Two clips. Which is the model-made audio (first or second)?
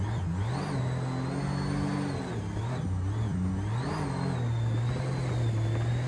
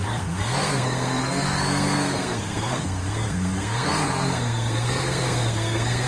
second